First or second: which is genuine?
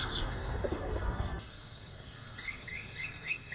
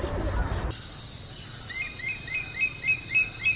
second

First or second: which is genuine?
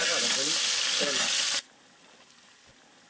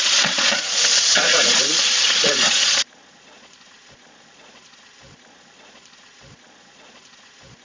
first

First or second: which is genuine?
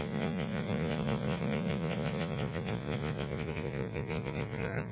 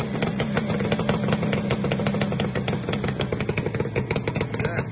second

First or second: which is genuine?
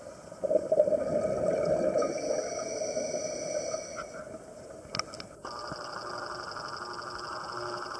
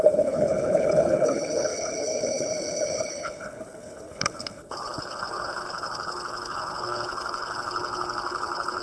first